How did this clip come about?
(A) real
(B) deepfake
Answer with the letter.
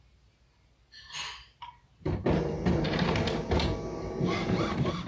A